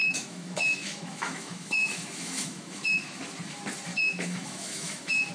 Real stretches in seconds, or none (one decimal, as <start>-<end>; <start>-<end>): 3.2-3.9